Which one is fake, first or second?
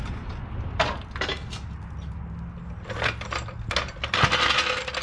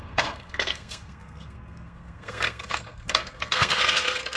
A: second